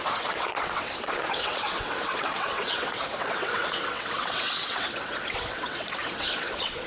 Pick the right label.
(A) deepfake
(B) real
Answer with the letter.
A